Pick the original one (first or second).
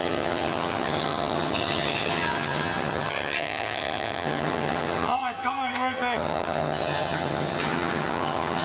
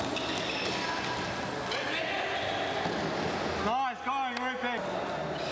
second